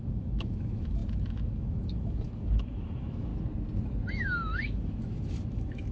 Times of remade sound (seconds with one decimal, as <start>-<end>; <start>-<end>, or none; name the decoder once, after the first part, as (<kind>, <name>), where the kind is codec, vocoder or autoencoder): 0.0-3.3 (autoencoder, DAC-VAE); 4.1-5.9